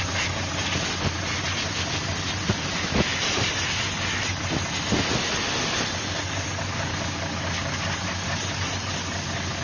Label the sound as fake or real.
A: real